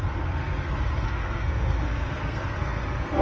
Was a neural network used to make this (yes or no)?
yes